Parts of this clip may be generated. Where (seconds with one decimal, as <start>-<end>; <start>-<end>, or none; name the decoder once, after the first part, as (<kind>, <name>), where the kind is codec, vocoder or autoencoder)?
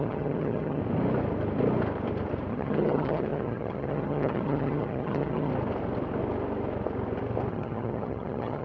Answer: 0.0-0.8 (vocoder, HiFi-GAN); 2.5-5.5; 7.5-8.6